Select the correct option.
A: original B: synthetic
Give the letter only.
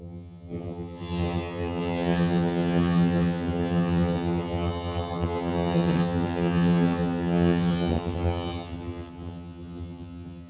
B